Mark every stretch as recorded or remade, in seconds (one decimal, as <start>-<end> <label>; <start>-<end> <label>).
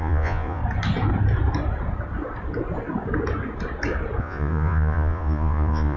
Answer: 0.0-0.6 remade; 0.6-4.2 recorded; 4.2-6.0 remade